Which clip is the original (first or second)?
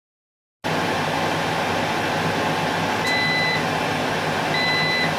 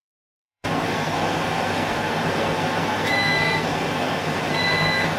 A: first